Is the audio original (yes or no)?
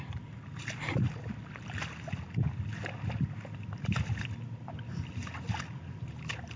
yes